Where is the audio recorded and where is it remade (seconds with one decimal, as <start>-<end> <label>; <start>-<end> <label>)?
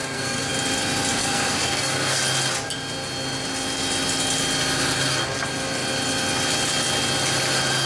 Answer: 0.0-0.5 remade; 0.5-1.1 recorded; 1.1-2.2 remade; 2.2-7.9 recorded